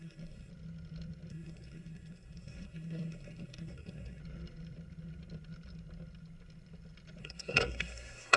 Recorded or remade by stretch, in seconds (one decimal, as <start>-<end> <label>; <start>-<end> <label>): 0.0-0.5 remade; 0.5-1.3 recorded; 1.3-4.2 remade; 4.2-7.2 recorded; 7.2-8.4 remade